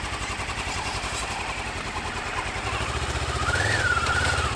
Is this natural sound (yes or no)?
yes